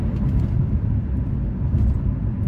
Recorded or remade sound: recorded